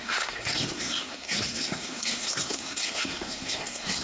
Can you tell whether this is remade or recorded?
remade